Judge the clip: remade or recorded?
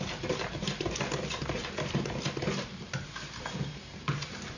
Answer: remade